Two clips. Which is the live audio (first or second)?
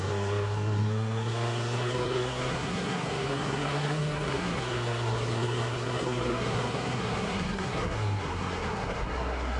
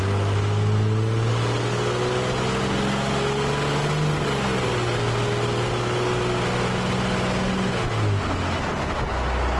second